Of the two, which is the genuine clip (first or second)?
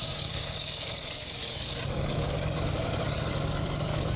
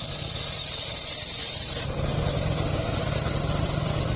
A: second